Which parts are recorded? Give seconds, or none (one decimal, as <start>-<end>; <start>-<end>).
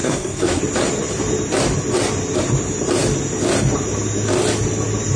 0.6-5.2